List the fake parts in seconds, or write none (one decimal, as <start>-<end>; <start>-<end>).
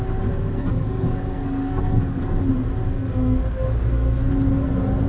0.5-2.2; 2.9-4.3